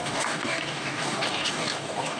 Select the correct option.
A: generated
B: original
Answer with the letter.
A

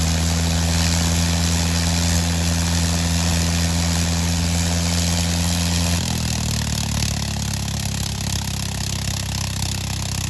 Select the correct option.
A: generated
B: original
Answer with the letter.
B